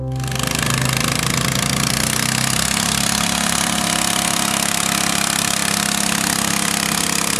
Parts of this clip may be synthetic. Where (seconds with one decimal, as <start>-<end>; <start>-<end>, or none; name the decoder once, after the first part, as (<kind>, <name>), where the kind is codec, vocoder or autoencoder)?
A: none